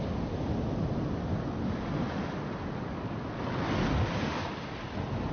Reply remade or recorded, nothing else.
recorded